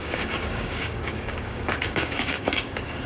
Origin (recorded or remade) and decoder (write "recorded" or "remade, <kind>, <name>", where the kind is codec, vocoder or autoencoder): remade, codec, DAC